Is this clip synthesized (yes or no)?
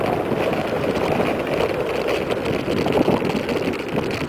no